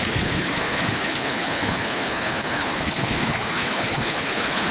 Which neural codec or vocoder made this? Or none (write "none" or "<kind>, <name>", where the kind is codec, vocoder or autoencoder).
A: codec, HILCodec